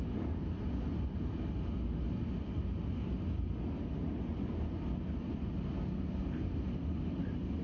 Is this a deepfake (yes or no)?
no